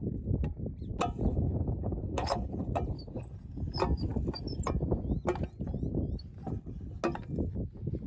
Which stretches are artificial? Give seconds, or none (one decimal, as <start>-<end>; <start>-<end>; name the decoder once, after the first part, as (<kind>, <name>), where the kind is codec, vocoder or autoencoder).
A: 1.3-2.6 (codec, HILCodec)